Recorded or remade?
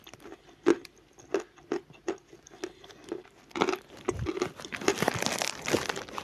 recorded